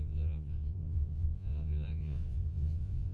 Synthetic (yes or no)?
yes